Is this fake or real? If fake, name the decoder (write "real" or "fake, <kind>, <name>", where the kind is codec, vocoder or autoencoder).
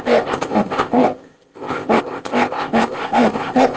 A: fake, codec, ZipCodec